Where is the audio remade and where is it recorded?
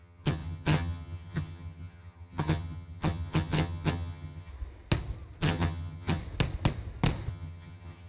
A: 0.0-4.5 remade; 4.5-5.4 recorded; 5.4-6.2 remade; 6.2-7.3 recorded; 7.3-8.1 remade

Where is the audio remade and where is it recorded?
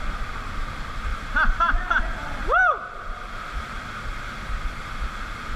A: 0.0-2.4 recorded; 2.4-4.5 remade; 4.5-5.6 recorded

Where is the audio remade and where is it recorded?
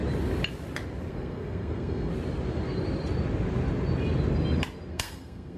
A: 0.0-1.1 recorded; 1.1-2.1 remade; 2.1-4.9 recorded; 4.9-5.6 remade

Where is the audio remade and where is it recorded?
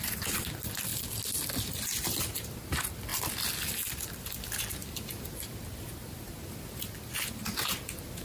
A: 0.0-8.2 recorded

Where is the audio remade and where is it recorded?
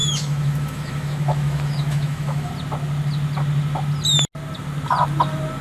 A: 0.0-2.5 remade; 2.5-5.6 recorded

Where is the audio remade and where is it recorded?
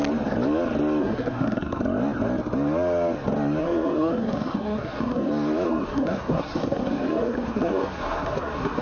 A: 0.0-1.0 recorded; 1.0-1.8 remade; 1.8-3.6 recorded; 3.6-5.3 remade; 5.3-5.7 recorded; 5.7-8.8 remade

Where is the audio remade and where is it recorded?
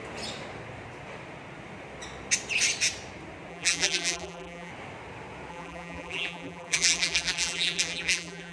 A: 0.0-3.5 recorded; 3.5-4.7 remade; 4.7-5.5 recorded; 5.5-8.5 remade